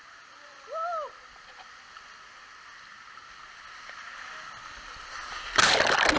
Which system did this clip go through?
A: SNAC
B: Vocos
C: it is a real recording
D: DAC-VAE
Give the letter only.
C